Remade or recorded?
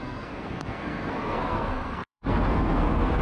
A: remade